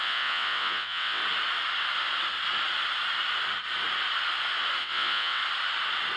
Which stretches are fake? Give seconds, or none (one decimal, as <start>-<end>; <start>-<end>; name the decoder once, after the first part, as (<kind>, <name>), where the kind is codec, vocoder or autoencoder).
0.0-1.2 (vocoder, WaveNeXt); 4.8-5.4